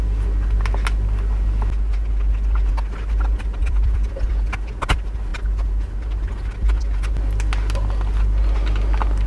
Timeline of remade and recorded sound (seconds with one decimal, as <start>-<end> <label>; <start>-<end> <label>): 0.0-3.6 recorded; 3.6-4.3 remade; 4.3-9.3 recorded